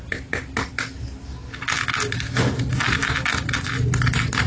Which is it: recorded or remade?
recorded